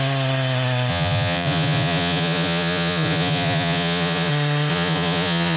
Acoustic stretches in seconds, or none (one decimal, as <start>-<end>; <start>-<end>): 0.0-0.9; 4.3-4.7